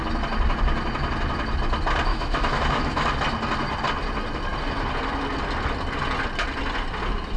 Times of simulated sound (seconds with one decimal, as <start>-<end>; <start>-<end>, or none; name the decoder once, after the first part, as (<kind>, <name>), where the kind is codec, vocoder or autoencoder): 2.1-3.1 (autoencoder, DAC-VAE)